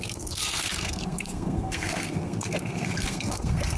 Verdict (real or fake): fake